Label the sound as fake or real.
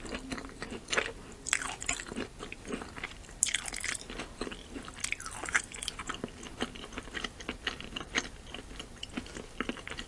fake